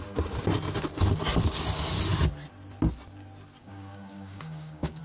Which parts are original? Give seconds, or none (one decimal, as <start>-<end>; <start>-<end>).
0.0-3.6